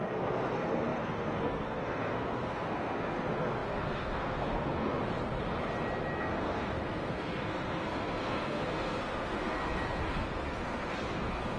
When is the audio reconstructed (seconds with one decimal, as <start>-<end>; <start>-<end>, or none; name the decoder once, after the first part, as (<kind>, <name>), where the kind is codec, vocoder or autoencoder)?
0.0-5.0 (codec, SNAC); 6.2-9.6; 10.1-11.6

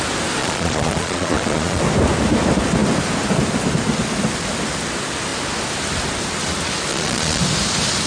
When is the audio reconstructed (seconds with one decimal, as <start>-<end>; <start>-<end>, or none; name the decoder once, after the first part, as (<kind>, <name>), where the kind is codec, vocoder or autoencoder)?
0.4-1.8 (vocoder, Vocos); 6.9-7.4